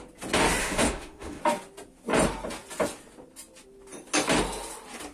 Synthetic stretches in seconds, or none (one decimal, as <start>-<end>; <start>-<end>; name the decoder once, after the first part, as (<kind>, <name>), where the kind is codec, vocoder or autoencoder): 0.6-1.4 (autoencoder, DAC-VAE)